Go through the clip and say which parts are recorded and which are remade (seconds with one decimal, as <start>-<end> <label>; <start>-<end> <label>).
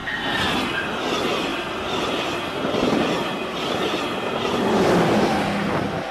0.0-6.1 recorded